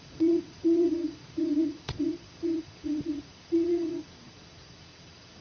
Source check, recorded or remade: remade